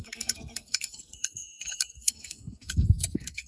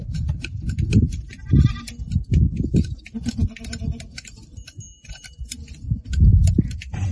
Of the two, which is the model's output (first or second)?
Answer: first